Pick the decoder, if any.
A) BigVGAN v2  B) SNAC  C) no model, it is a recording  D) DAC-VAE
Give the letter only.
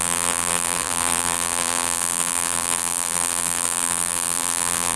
A